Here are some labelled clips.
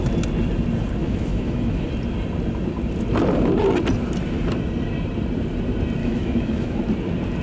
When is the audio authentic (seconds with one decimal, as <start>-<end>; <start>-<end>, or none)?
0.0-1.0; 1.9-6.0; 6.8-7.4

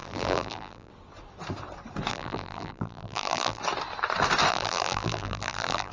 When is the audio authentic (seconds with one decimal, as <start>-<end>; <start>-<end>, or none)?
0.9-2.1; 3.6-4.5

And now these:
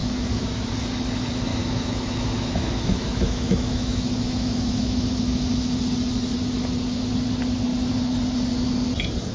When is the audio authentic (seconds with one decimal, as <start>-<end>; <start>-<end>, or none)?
0.7-1.5; 5.8-9.3